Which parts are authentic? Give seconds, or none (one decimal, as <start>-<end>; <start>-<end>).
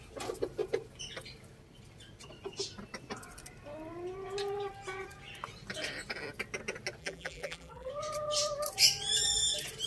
0.0-7.0; 7.9-9.9